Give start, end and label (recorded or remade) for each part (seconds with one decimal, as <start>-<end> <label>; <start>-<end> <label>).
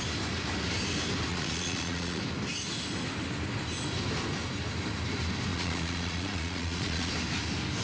0.0-1.3 recorded; 1.3-2.2 remade; 2.2-5.5 recorded; 5.5-7.1 remade; 7.1-7.8 recorded